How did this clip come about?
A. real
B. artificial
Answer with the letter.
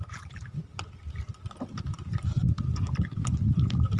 A